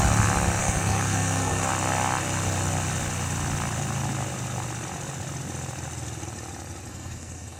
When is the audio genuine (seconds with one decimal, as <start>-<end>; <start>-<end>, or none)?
0.0-0.6; 1.7-6.9